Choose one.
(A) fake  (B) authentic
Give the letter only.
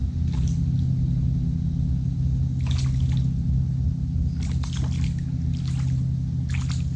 B